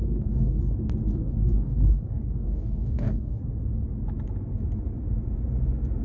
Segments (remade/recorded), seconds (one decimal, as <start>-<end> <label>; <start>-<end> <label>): 0.0-0.6 remade; 0.6-1.1 recorded; 1.1-3.4 remade; 3.4-6.0 recorded